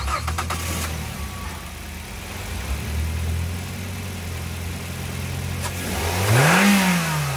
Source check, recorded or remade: recorded